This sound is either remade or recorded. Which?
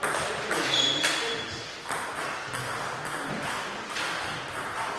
recorded